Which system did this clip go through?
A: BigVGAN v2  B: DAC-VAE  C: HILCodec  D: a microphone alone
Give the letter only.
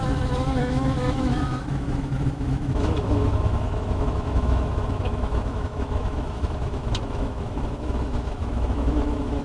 B